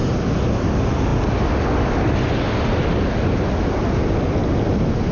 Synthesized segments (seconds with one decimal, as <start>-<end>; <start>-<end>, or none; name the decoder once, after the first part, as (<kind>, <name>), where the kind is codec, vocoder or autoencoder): none